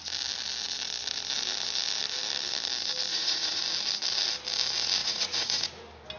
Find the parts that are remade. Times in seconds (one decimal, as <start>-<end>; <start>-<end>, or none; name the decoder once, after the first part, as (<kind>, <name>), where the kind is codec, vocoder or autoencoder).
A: 3.1-3.6 (vocoder, Vocos); 5.0-5.7

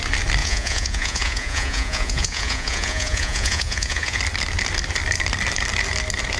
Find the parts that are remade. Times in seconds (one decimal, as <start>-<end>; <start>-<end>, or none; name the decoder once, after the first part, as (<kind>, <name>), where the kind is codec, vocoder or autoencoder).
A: 0.4-4.2 (vocoder, Vocos)

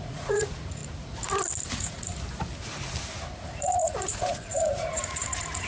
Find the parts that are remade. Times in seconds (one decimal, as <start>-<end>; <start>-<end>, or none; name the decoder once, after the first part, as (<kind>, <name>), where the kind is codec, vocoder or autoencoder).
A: 0.0-0.8 (vocoder, Vocos); 1.7-2.1; 3.4-5.7

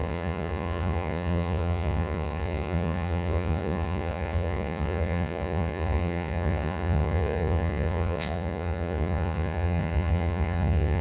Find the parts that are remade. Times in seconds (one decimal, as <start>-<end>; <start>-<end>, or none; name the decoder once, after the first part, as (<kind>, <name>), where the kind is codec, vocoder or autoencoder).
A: 0.0-11.0 (vocoder, Vocos)

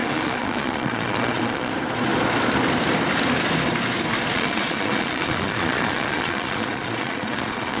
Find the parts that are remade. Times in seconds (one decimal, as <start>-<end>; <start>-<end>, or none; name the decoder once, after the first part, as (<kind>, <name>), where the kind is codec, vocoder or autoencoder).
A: 0.0-1.7 (vocoder, Vocos); 4.3-7.8

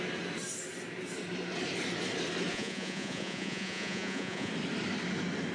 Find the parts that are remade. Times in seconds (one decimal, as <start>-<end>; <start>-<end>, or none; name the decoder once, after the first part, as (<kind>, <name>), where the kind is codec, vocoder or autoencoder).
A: 2.5-4.5 (vocoder, Vocos)